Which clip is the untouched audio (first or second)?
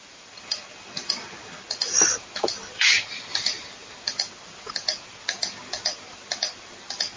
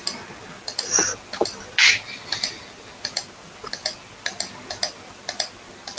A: second